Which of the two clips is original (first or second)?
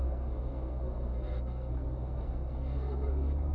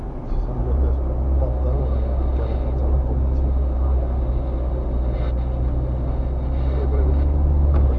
second